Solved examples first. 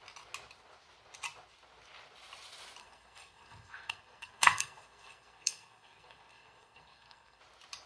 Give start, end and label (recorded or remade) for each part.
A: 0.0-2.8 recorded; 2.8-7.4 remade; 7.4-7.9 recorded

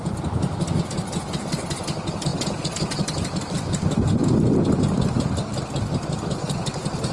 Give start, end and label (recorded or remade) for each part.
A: 0.0-7.1 recorded

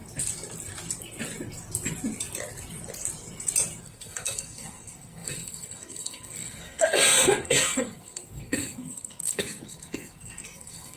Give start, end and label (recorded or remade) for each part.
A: 0.0-3.8 recorded; 3.8-11.0 remade

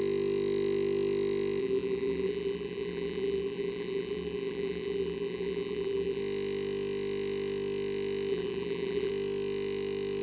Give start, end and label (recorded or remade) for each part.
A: 0.0-1.6 recorded; 1.6-6.2 remade; 6.2-8.3 recorded; 8.3-9.1 remade; 9.1-10.2 recorded